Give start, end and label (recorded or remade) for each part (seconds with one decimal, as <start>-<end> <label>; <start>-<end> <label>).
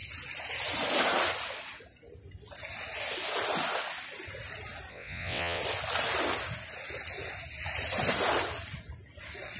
0.0-4.9 recorded; 4.9-5.6 remade; 5.6-9.6 recorded